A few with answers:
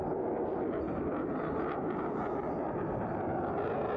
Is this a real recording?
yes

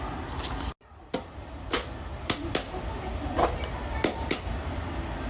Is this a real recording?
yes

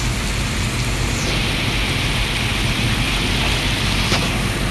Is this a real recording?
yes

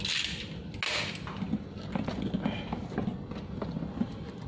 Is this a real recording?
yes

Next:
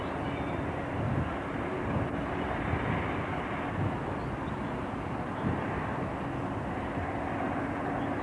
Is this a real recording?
yes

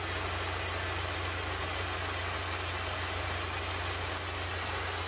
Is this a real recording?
yes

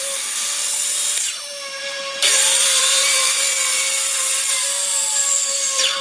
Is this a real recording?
no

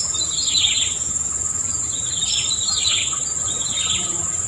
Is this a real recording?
no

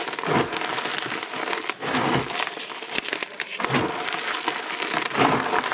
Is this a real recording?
yes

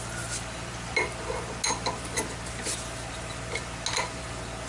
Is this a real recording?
yes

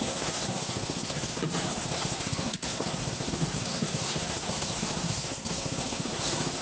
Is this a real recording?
no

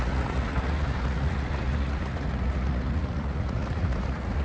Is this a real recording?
no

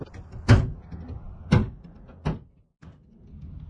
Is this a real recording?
yes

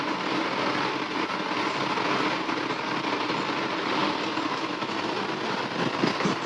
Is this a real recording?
yes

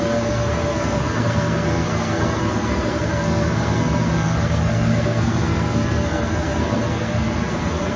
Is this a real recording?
no